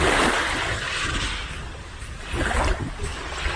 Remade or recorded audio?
recorded